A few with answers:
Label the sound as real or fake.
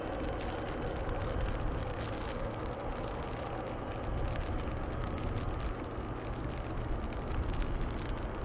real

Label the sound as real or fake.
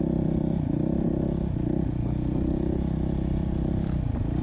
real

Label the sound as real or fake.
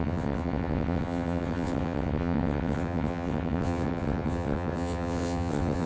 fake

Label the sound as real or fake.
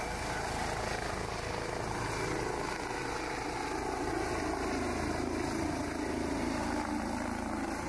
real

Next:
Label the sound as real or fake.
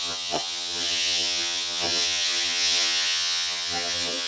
fake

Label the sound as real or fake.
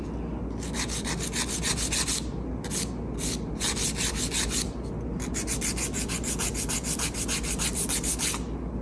real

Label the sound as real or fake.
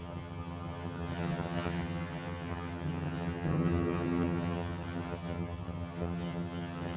fake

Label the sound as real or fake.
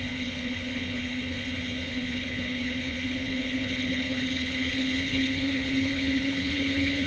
fake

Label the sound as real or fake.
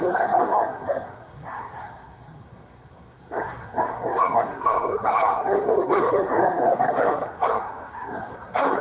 fake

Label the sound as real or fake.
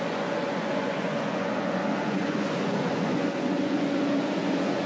fake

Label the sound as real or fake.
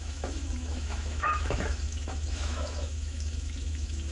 fake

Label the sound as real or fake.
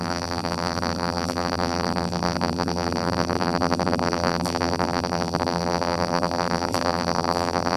fake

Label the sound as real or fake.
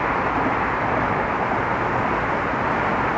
real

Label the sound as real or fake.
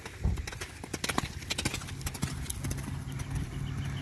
real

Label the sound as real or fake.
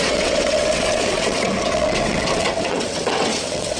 fake